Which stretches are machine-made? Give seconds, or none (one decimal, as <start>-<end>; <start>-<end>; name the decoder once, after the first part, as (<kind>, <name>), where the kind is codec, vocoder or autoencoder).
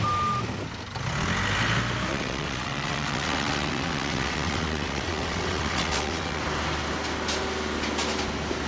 2.1-6.4 (vocoder, WaveNeXt)